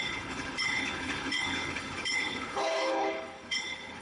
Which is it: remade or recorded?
remade